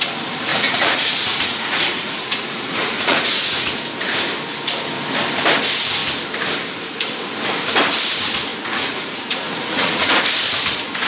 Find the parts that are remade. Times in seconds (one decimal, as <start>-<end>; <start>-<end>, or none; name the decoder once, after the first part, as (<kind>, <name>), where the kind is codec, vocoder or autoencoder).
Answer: 0.5-3.7 (vocoder, Vocos); 8.5-10.2